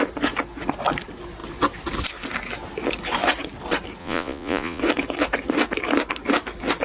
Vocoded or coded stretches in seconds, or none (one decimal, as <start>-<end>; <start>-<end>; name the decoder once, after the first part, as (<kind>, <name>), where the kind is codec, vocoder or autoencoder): 4.0-4.8 (vocoder, Vocos)

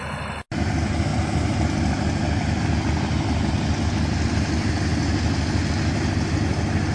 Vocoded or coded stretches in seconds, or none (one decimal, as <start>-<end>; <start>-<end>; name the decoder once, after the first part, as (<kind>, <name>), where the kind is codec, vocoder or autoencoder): none

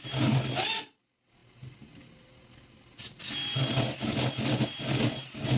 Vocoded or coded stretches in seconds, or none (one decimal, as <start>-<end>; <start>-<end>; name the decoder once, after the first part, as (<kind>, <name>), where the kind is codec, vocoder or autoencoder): none

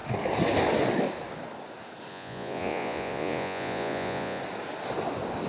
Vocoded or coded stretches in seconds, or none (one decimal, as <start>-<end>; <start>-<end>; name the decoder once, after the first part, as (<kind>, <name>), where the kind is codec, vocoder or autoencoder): 2.1-4.4 (vocoder, Vocos)

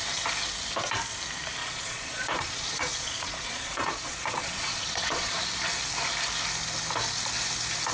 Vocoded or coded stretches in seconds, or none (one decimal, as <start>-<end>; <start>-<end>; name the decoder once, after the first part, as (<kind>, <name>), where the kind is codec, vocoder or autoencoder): 1.6-5.4 (vocoder, Vocos)

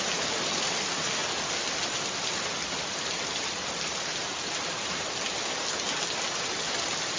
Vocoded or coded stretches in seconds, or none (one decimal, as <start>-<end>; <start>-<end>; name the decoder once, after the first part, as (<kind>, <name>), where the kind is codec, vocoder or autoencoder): none